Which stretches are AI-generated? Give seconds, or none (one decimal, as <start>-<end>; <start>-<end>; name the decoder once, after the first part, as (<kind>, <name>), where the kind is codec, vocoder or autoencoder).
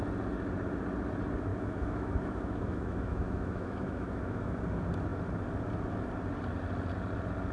1.5-4.6 (autoencoder, DAC-VAE)